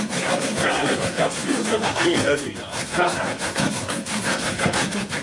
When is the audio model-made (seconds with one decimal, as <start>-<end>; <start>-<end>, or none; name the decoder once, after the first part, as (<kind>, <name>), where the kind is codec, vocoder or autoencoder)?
0.0-5.2 (codec, SNAC)